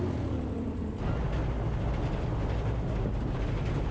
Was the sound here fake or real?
real